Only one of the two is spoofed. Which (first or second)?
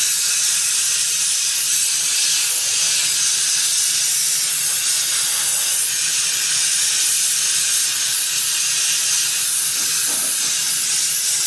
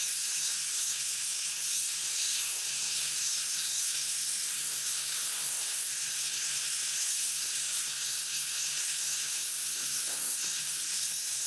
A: second